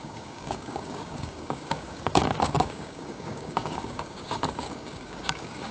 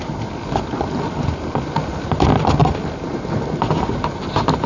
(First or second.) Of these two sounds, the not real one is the first